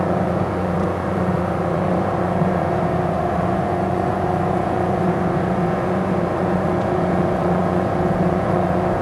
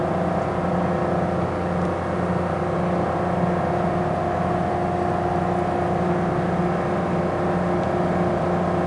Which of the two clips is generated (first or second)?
first